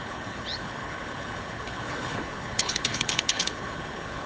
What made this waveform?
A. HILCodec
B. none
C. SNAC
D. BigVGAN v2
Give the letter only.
A